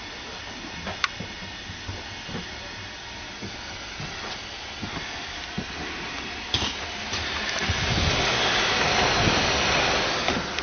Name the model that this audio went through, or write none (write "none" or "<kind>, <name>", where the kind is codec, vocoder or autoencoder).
none